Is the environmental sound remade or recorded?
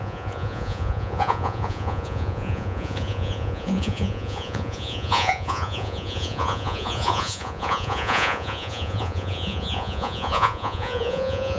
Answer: remade